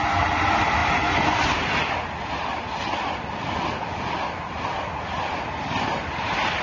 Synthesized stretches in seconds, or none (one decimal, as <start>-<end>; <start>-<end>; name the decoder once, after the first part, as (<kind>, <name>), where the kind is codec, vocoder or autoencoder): none

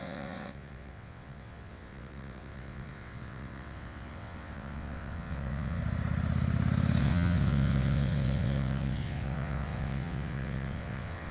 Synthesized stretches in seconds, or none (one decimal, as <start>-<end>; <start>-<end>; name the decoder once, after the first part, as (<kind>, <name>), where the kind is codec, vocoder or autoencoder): 0.0-5.8 (vocoder, WaveNeXt); 7.0-11.3

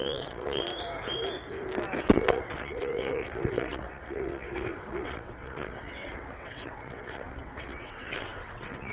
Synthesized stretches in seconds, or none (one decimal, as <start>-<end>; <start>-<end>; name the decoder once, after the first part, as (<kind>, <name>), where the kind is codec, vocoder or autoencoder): 0.0-0.7 (vocoder, WaveNeXt); 2.0-8.9

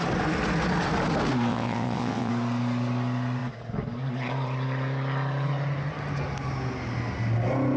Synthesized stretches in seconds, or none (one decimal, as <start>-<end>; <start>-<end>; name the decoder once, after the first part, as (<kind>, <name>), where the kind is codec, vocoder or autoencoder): 1.5-2.3 (vocoder, WaveNeXt)

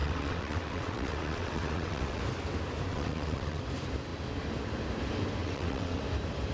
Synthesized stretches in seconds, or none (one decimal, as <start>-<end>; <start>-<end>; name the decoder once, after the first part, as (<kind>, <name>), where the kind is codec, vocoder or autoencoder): 0.0-2.2 (vocoder, WaveNeXt); 2.9-3.6; 5.4-6.0

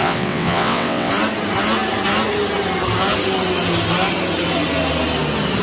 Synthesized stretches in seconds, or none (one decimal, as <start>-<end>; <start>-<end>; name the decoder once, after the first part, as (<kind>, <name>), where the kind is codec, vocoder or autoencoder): 0.0-1.1 (vocoder, WaveNeXt)

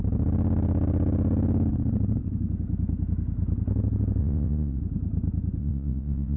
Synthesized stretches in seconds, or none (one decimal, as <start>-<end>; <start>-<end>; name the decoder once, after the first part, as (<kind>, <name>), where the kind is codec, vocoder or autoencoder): 4.2-4.8 (vocoder, WaveNeXt); 5.6-6.4

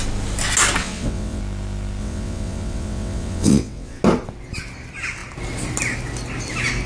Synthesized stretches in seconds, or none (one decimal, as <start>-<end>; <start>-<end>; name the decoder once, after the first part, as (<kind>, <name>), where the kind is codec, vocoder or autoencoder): 0.8-1.4 (vocoder, WaveNeXt); 2.0-4.0